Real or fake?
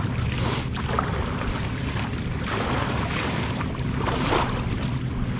real